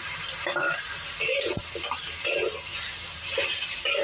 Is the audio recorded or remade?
recorded